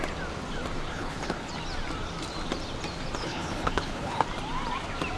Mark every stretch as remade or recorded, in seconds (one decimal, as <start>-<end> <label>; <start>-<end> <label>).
0.0-0.9 recorded; 0.9-1.5 remade; 1.5-3.2 recorded; 3.2-4.2 remade; 4.2-5.2 recorded